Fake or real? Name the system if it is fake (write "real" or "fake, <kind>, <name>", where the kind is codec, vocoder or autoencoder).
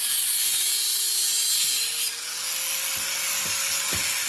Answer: real